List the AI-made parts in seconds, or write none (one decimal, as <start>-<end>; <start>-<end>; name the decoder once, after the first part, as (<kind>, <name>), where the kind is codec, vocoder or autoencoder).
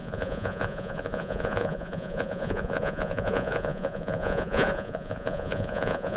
0.0-6.2 (vocoder, Vocos)